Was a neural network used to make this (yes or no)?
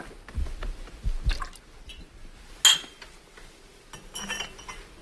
no